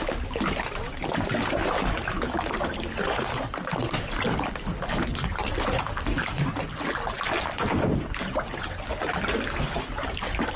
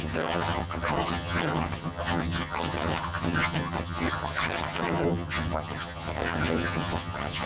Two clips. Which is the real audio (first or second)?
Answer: first